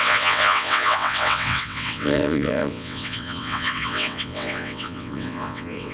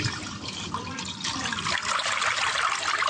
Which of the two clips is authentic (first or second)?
second